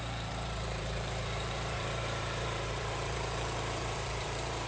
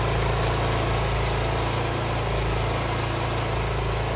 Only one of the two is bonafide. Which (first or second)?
second